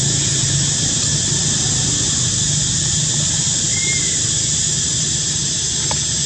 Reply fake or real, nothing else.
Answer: real